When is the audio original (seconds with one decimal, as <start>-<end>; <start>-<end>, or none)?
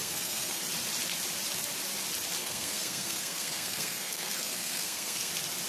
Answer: 0.6-2.4; 5.3-5.7